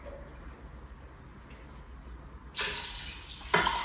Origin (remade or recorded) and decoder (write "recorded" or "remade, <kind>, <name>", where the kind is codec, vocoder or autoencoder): recorded